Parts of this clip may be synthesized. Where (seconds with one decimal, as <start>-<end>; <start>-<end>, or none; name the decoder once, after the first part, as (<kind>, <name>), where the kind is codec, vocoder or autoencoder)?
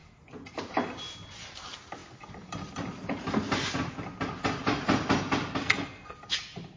5.6-6.2 (codec, SNAC)